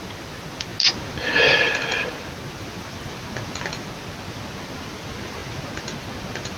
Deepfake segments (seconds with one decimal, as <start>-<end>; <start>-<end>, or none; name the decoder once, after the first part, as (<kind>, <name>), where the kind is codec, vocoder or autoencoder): none

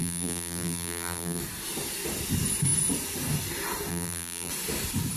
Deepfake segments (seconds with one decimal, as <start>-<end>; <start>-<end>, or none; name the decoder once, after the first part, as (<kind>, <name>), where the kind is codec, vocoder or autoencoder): 0.0-1.4 (vocoder, BigVGAN v2); 3.9-4.5